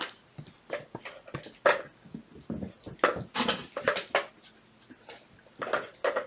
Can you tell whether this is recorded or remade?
recorded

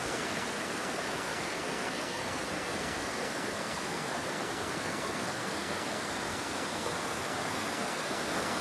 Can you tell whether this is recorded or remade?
remade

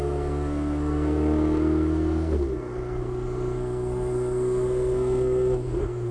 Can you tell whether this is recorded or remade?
remade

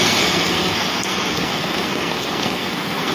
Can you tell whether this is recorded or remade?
remade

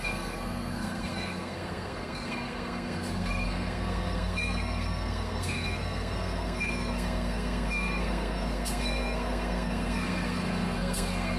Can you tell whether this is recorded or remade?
remade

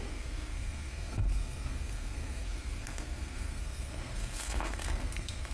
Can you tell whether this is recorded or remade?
remade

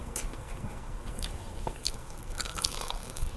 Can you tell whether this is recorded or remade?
remade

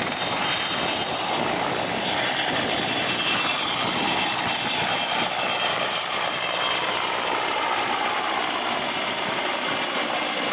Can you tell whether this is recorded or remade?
recorded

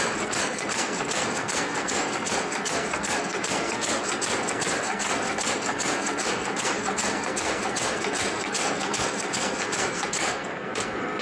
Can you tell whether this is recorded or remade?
remade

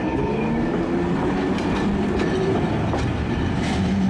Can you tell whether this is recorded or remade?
recorded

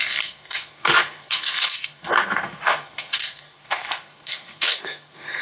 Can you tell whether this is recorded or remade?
remade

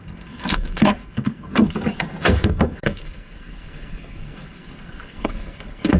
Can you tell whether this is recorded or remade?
remade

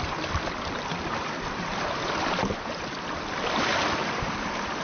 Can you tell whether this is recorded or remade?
recorded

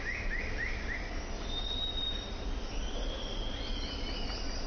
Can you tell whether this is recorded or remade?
recorded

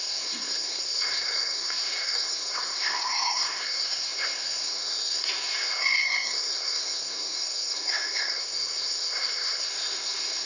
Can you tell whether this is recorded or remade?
remade